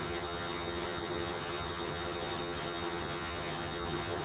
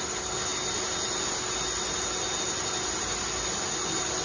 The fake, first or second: first